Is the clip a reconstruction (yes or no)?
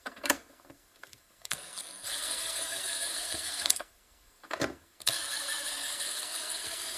yes